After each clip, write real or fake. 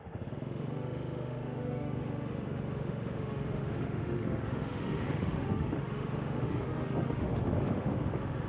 fake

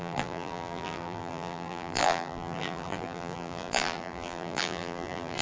fake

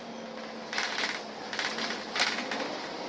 real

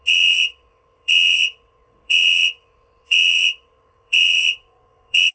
fake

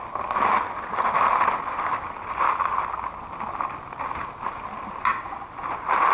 real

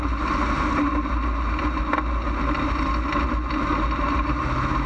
real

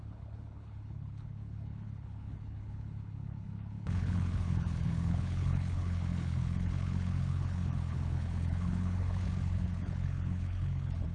fake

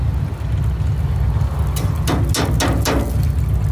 real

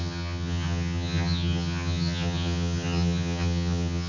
fake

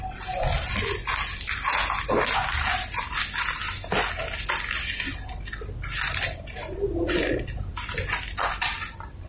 real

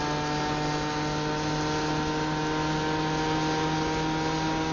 real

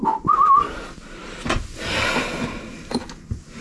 real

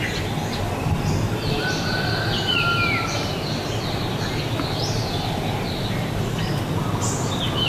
real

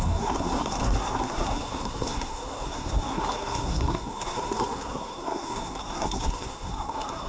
fake